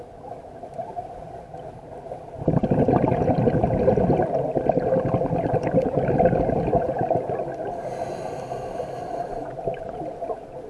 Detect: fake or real real